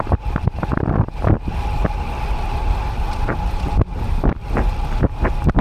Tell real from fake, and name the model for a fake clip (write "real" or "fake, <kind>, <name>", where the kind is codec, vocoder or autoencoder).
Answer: real